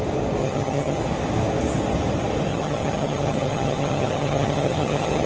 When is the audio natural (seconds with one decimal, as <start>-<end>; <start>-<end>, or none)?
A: 0.0-0.4; 1.0-2.5